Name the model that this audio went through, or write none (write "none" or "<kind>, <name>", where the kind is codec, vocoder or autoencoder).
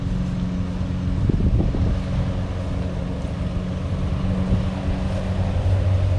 none